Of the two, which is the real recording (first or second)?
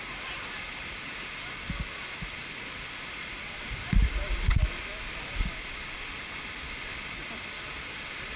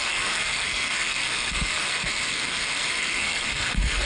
first